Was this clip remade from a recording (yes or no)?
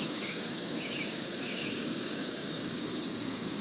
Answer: yes